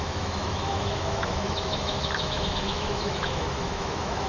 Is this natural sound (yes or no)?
no